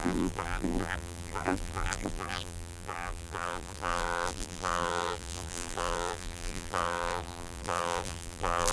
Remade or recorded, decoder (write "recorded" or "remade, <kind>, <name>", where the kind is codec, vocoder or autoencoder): remade, vocoder, BigVGAN v2